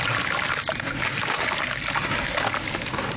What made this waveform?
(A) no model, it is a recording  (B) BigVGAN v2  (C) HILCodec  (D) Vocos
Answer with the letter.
B